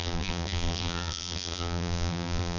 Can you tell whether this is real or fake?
fake